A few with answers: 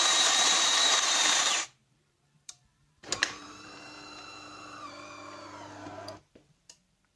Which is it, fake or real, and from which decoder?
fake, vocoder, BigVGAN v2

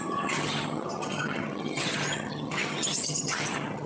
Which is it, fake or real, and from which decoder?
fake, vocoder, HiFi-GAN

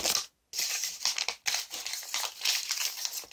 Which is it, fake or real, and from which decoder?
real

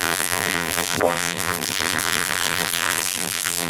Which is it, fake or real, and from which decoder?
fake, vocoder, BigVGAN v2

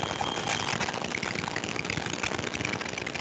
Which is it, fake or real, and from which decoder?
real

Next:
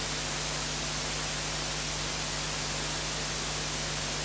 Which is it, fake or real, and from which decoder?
real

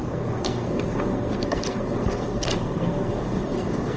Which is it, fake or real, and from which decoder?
fake, codec, SNAC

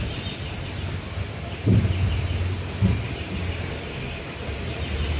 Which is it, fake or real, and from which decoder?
real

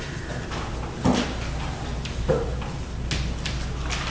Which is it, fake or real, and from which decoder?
real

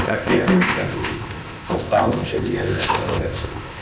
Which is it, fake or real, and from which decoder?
fake, codec, ZipCodec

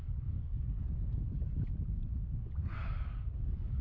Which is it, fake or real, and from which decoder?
fake, codec, DAC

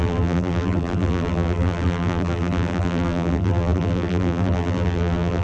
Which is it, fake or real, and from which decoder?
fake, vocoder, BigVGAN v2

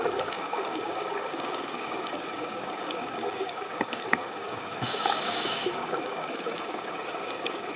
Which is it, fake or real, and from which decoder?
fake, codec, DAC